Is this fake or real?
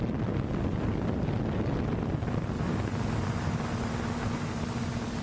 real